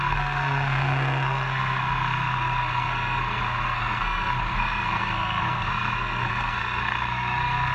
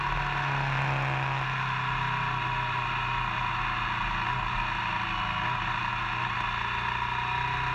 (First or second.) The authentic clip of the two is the second